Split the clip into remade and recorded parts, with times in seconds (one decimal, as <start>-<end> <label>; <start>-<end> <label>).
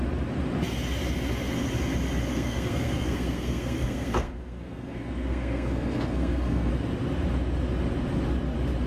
0.0-2.3 recorded; 2.3-6.7 remade; 6.7-8.9 recorded